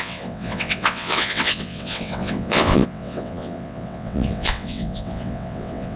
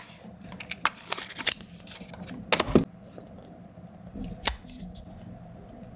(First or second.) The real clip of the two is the second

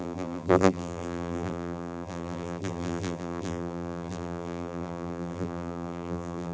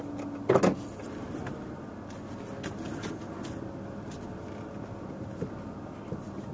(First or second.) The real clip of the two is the second